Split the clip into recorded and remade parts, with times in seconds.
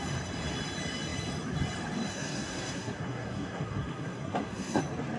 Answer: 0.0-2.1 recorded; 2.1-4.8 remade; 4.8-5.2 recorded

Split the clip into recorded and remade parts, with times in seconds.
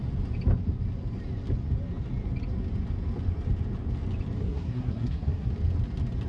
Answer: 0.0-4.4 recorded; 4.4-5.5 remade; 5.5-6.3 recorded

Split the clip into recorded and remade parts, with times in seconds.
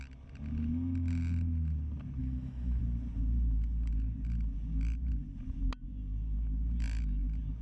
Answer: 0.0-2.2 recorded; 2.2-2.8 remade; 2.8-7.6 recorded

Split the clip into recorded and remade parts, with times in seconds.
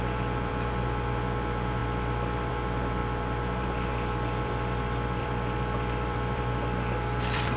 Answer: 0.0-7.6 remade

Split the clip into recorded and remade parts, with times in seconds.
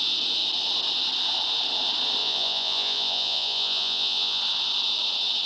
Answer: 0.0-2.2 recorded; 2.2-4.4 remade; 4.4-5.5 recorded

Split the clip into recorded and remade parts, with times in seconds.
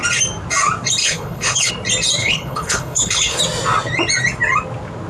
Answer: 0.0-1.0 recorded; 1.0-1.7 remade; 1.7-2.2 recorded; 2.2-3.4 remade; 3.4-5.1 recorded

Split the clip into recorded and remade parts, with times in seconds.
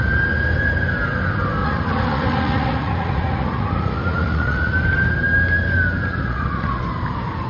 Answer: 0.0-1.6 recorded; 1.6-4.7 remade; 4.7-6.1 recorded; 6.1-6.8 remade; 6.8-7.5 recorded